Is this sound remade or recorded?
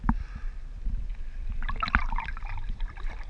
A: recorded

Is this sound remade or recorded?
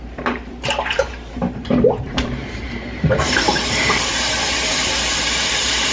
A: remade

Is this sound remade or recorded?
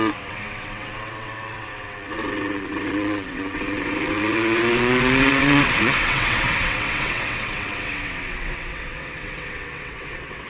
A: remade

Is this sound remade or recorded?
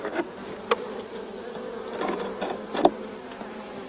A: recorded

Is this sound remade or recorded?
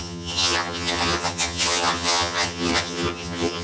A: remade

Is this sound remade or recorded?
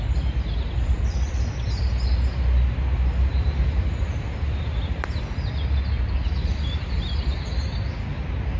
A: recorded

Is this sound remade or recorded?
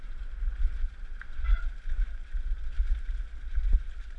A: recorded